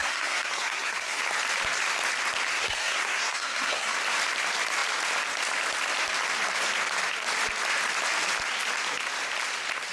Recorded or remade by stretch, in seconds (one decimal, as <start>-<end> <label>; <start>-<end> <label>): 0.0-1.2 remade; 1.2-2.5 recorded; 2.5-4.0 remade; 4.0-9.9 recorded